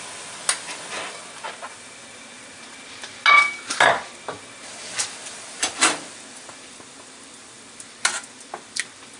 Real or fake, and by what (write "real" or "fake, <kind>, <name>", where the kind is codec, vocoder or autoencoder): real